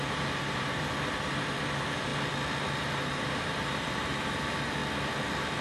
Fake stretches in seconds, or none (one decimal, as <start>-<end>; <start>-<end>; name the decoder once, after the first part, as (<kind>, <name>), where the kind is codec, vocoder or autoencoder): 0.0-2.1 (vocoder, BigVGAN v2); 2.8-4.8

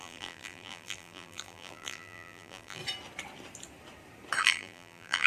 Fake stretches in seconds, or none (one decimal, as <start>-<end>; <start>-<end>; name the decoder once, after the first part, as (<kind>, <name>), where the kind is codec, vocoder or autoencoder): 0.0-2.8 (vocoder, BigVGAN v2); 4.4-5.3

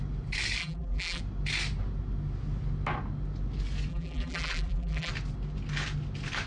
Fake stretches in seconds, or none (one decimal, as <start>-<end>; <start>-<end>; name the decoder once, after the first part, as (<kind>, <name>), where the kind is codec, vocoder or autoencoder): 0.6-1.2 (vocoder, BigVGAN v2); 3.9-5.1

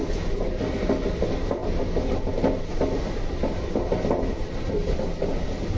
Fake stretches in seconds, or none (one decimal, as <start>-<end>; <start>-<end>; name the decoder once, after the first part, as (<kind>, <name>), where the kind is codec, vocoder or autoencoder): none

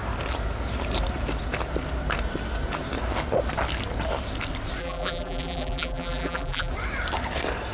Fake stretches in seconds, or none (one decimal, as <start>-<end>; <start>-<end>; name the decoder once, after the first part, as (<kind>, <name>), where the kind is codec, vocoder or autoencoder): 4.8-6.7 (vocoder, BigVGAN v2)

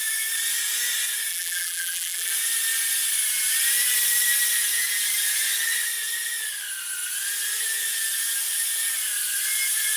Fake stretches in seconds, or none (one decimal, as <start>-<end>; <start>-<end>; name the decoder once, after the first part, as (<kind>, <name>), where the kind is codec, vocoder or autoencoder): 1.3-2.3 (vocoder, BigVGAN v2)

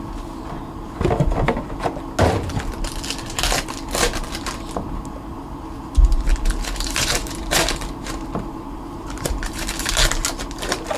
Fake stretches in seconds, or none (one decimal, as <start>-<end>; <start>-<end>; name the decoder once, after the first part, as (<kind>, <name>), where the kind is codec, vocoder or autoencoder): 6.3-9.7 (vocoder, BigVGAN v2)